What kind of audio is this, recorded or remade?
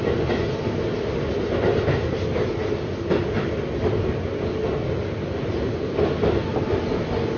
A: recorded